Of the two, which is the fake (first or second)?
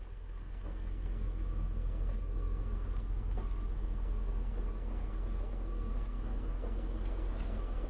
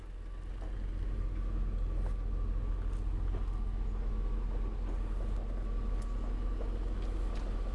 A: first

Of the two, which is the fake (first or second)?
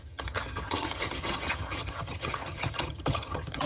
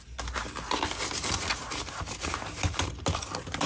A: first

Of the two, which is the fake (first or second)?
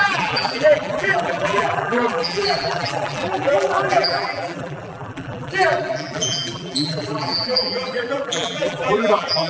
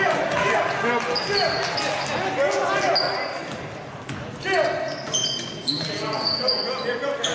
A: first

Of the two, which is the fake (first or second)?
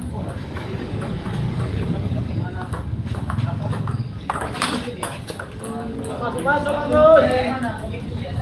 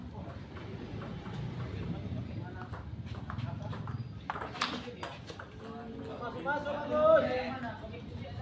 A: first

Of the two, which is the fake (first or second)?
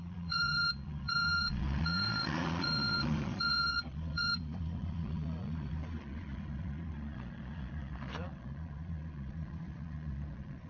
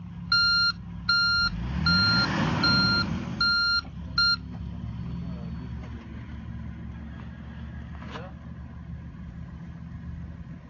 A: first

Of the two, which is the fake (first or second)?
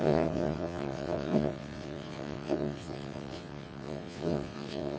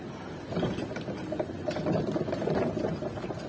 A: first